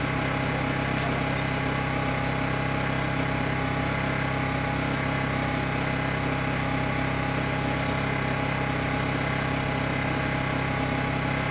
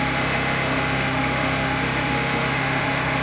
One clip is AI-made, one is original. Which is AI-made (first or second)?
second